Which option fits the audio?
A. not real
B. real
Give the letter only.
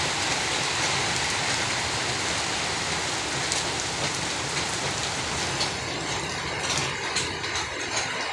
B